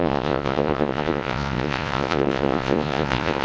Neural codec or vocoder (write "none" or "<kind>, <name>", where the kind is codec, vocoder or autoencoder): vocoder, Vocos